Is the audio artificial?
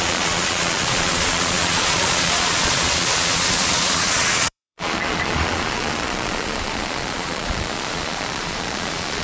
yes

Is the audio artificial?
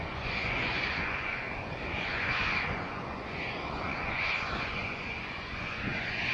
yes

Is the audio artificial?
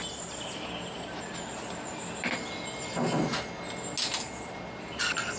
no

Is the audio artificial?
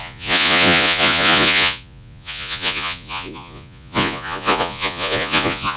yes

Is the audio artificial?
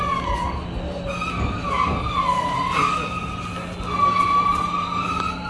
no